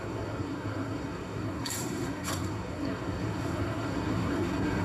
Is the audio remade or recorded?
remade